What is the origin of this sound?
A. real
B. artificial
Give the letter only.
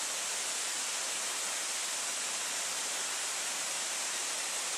A